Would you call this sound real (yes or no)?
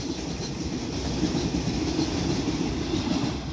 yes